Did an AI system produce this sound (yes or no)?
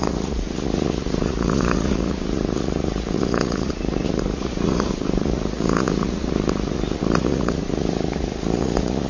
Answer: yes